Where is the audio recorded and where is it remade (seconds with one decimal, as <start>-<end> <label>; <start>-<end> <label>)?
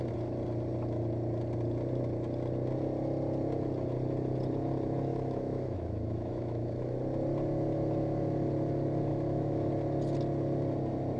0.0-5.1 recorded; 5.1-7.0 remade; 7.0-9.1 recorded; 9.1-9.7 remade; 9.7-11.2 recorded